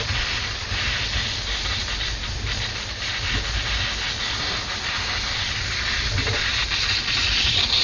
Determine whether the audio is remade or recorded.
recorded